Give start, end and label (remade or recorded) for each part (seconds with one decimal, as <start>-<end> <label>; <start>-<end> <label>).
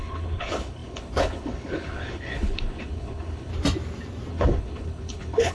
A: 0.0-3.5 remade; 3.5-4.3 recorded; 4.3-5.5 remade